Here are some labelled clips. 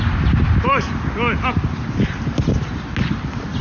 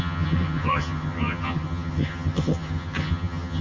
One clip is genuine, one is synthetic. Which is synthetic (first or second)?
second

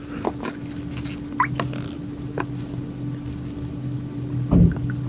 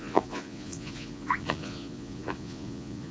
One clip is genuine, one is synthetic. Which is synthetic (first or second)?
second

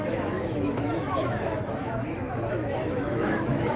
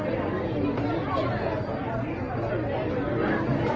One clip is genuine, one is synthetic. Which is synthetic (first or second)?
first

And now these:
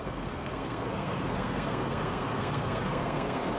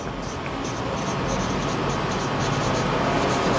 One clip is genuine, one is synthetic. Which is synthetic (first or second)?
first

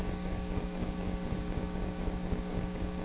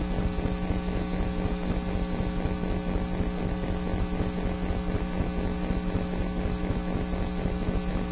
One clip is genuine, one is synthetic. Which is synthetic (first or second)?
first